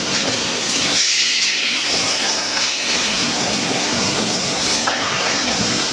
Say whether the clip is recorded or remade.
remade